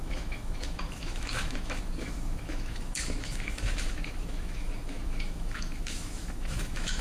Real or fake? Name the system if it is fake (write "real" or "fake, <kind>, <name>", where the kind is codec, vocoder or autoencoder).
fake, autoencoder, DAC-VAE